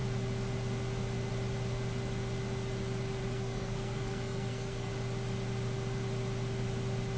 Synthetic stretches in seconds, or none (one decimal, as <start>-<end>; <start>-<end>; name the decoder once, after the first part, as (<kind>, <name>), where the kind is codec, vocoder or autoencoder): 3.2-4.9 (codec, SNAC)